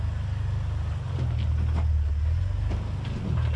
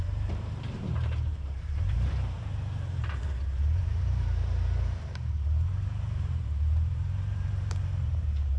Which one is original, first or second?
first